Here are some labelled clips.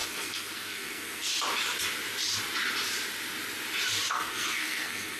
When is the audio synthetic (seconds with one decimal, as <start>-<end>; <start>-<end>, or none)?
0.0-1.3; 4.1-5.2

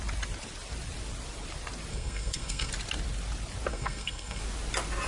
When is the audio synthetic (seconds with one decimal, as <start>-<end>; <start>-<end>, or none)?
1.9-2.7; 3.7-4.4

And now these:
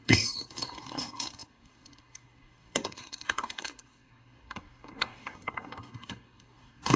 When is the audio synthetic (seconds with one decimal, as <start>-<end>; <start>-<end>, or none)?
0.0-7.0

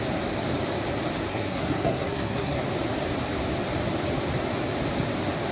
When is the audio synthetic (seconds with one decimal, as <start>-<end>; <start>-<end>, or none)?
1.3-2.6

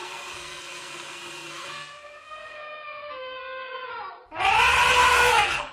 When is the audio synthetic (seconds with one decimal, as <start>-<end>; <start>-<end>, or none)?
0.0-3.9; 5.1-5.7